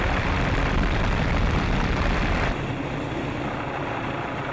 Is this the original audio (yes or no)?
yes